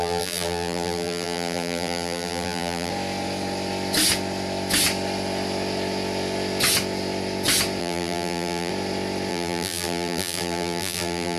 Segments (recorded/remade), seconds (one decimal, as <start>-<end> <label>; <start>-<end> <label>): 0.0-2.9 remade; 2.9-7.8 recorded; 7.8-8.7 remade; 8.7-9.3 recorded; 9.3-11.4 remade